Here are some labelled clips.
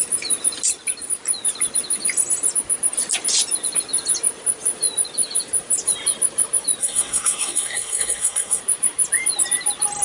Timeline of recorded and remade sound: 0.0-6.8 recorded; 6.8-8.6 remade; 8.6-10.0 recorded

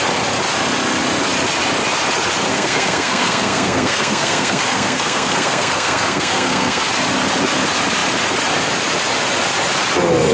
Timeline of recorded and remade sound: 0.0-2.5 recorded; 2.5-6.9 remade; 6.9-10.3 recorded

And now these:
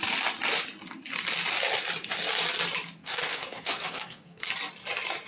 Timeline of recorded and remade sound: 0.0-3.0 recorded; 3.0-4.5 remade; 4.5-5.3 recorded

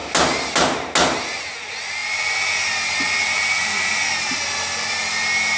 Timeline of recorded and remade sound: 0.0-5.6 recorded